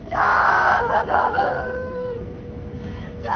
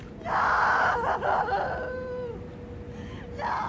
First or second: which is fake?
first